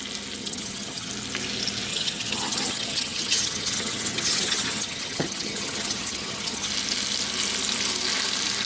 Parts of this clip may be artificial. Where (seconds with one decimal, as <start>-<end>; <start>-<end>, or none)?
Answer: 0.4-1.1; 1.9-6.7